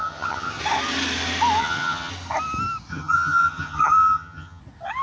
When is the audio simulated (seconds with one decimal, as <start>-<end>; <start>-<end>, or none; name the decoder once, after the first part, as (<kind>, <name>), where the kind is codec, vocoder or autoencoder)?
0.0-0.6 (vocoder, HiFi-GAN); 1.6-2.1; 2.9-4.6